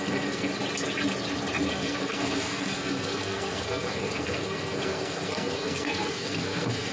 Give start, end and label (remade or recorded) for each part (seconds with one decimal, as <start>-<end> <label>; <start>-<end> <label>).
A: 0.0-0.5 remade; 0.5-1.7 recorded; 1.7-6.9 remade